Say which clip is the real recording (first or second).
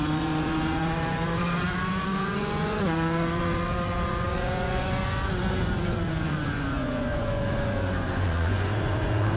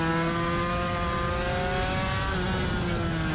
second